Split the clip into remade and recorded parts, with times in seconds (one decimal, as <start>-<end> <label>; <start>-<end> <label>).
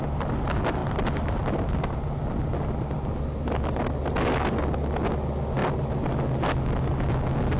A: 0.0-7.6 recorded